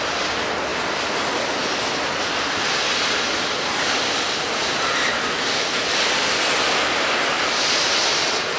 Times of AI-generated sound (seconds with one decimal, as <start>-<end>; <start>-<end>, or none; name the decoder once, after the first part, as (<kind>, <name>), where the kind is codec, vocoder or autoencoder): none